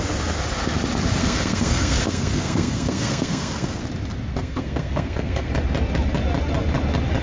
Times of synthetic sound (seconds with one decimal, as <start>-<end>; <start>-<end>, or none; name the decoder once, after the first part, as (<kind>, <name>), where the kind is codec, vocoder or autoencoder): 1.2-3.8 (codec, SNAC); 4.3-5.5